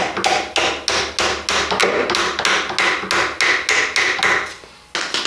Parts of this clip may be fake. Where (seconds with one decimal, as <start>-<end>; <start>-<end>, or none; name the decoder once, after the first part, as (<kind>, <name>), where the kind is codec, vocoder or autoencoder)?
none